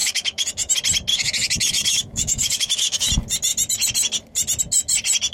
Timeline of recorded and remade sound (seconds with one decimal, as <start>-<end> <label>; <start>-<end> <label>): 0.0-0.7 remade; 0.7-1.1 recorded; 1.1-3.1 remade; 3.1-5.3 recorded